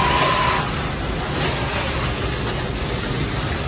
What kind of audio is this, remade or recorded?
recorded